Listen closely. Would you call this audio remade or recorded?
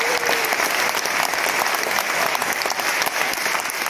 remade